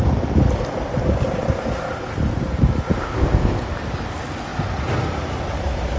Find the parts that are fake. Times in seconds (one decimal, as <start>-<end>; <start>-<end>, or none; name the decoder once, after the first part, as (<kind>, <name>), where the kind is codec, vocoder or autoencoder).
3.0-3.6 (codec, ZipCodec)